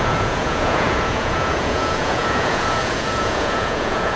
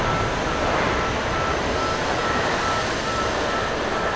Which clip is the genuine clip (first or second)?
second